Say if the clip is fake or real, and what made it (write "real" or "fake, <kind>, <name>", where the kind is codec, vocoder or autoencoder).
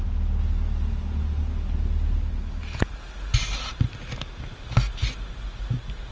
real